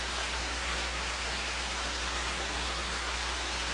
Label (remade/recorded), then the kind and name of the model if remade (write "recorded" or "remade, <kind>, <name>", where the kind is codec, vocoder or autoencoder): remade, codec, SNAC